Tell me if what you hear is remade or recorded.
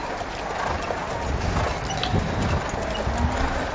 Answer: recorded